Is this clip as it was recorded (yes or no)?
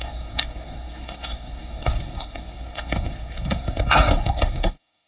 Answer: no